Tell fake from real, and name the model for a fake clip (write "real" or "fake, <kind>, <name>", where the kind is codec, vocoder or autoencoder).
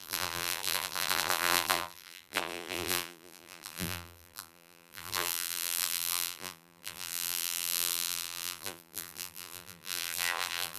fake, vocoder, BigVGAN v2